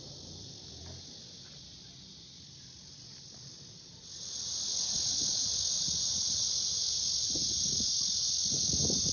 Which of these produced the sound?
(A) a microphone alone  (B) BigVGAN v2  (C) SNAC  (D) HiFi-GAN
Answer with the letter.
A